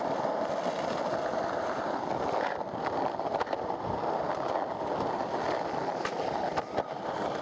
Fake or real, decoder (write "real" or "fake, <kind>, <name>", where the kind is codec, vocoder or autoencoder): real